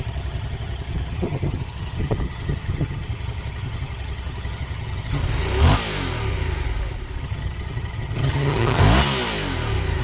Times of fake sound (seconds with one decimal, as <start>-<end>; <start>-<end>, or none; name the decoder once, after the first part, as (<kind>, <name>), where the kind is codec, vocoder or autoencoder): 0.0-5.2 (vocoder, HiFi-GAN); 7.2-8.8